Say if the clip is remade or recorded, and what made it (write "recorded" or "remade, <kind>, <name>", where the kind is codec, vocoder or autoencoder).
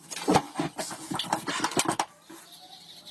recorded